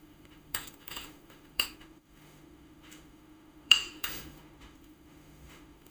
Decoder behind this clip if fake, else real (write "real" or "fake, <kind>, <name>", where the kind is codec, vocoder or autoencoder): fake, autoencoder, DAC-VAE